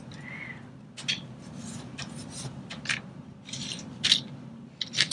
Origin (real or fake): real